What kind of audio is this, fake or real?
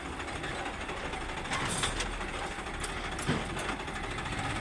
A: real